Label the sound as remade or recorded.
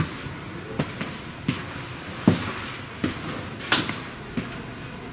recorded